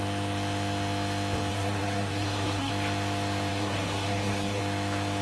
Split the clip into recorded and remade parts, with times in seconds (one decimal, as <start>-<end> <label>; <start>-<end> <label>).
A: 0.0-1.5 recorded; 1.5-2.7 remade; 2.7-3.5 recorded; 3.5-4.6 remade; 4.6-5.2 recorded